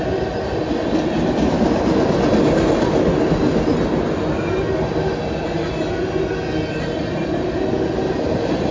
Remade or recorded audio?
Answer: recorded